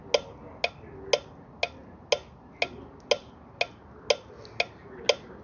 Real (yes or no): yes